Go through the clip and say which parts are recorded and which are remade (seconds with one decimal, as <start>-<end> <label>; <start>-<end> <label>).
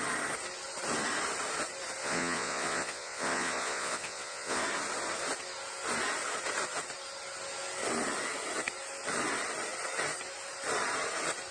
0.0-2.0 recorded; 2.0-4.6 remade; 4.6-11.5 recorded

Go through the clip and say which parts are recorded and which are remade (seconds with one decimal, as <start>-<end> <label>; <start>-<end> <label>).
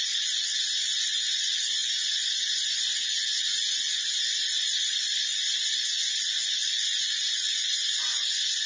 0.0-8.7 remade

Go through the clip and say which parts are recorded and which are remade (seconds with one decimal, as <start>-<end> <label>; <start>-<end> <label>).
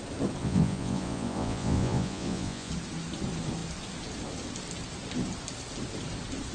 0.0-0.4 recorded; 0.4-2.7 remade; 2.7-6.5 recorded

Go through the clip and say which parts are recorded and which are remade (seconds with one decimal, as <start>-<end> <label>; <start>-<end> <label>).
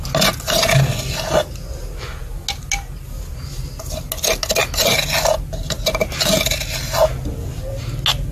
0.0-8.3 recorded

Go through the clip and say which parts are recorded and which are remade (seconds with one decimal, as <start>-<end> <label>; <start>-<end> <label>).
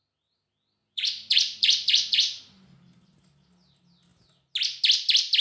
0.0-0.8 recorded; 0.8-2.4 remade; 2.4-5.4 recorded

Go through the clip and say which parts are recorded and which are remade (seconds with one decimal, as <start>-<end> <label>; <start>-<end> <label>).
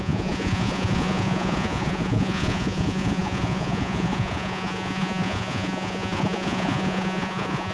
0.0-7.7 remade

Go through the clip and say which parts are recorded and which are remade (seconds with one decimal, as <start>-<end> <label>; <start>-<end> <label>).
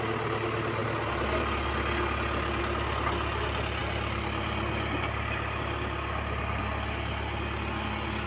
0.0-8.3 recorded